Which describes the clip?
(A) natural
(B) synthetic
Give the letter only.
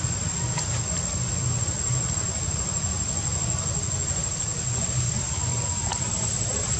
A